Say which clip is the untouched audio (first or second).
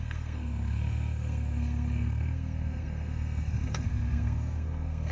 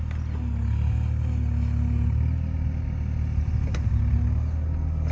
second